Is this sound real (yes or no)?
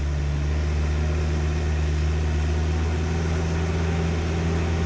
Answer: yes